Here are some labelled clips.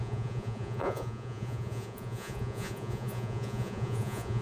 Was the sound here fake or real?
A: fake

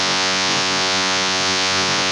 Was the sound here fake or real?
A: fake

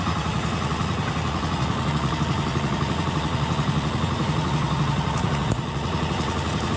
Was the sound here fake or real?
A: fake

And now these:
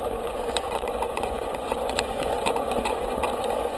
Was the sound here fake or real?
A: fake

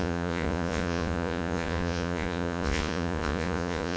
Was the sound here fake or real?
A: fake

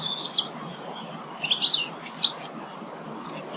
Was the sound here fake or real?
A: real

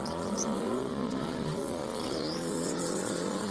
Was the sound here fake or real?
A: fake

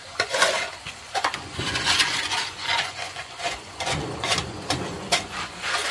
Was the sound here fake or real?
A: fake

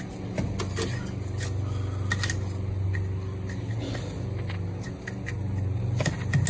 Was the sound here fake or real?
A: real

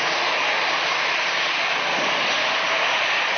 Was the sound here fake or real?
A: real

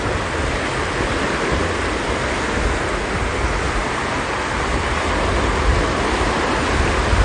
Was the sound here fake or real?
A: real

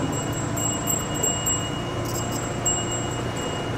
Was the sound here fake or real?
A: real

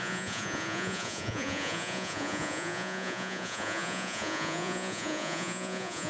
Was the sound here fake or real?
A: fake